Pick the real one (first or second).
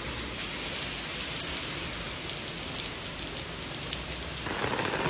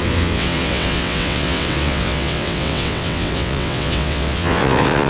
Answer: first